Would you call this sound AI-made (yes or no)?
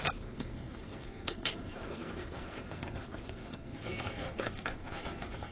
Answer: yes